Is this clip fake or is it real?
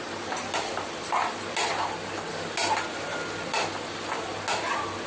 real